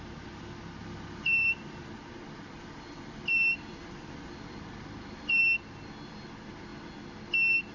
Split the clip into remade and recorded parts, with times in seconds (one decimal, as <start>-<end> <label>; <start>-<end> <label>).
0.0-0.8 recorded; 0.8-5.4 remade; 5.4-7.7 recorded